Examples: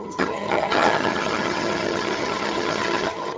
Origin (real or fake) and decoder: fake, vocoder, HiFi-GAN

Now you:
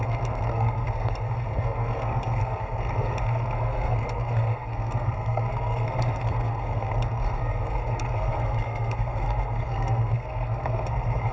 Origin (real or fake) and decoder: fake, codec, SNAC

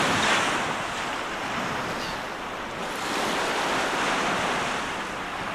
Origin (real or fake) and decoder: real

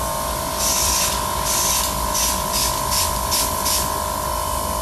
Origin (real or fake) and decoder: fake, vocoder, BigVGAN v2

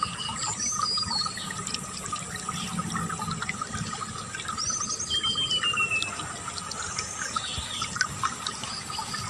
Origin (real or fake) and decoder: real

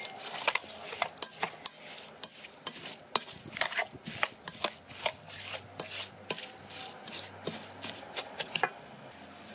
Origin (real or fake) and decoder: real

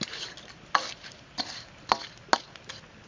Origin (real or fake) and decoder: real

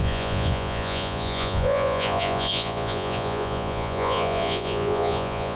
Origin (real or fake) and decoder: fake, vocoder, Vocos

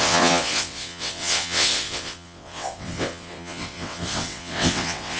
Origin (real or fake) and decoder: fake, vocoder, WaveNeXt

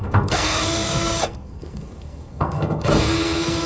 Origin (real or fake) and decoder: fake, codec, SNAC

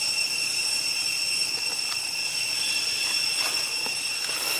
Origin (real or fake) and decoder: real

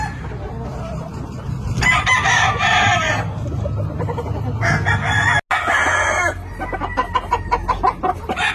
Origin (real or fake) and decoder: real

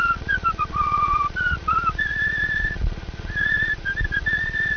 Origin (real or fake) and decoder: fake, vocoder, Vocos